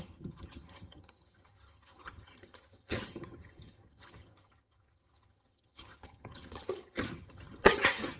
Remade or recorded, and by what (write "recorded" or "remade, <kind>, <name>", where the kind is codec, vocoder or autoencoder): remade, vocoder, HiFi-GAN